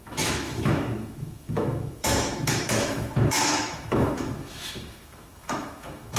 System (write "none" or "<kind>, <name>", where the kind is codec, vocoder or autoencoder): autoencoder, DAC-VAE